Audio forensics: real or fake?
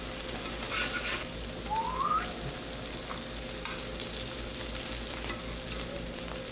real